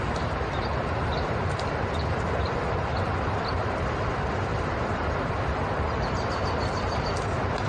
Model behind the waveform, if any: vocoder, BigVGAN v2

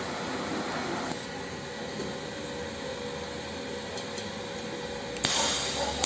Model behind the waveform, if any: none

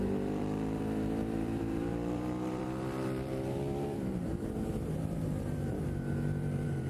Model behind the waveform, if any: vocoder, BigVGAN v2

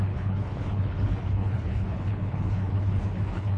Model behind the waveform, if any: codec, HILCodec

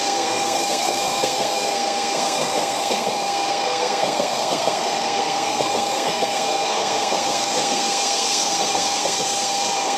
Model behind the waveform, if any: codec, SNAC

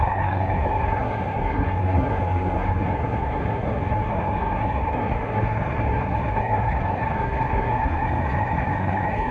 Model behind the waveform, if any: codec, SNAC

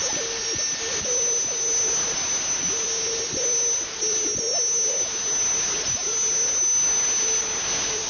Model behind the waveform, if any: none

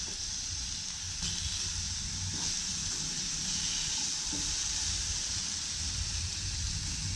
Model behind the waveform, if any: none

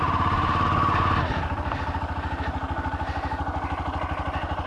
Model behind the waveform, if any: none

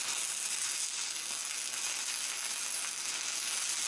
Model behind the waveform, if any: none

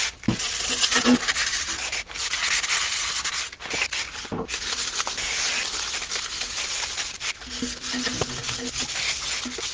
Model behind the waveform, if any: none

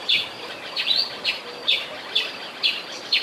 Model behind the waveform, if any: none